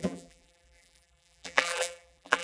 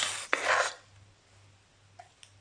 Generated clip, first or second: first